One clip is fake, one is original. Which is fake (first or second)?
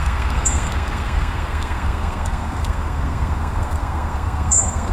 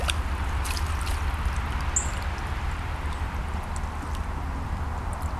first